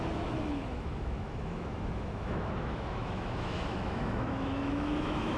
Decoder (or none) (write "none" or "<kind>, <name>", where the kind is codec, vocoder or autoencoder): autoencoder, DAC-VAE